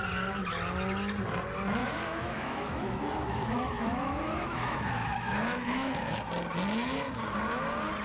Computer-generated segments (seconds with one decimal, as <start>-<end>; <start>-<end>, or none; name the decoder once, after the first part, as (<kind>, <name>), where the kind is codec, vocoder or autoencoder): 1.8-6.2 (autoencoder, DAC-VAE)